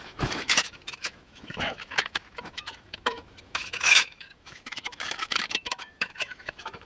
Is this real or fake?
fake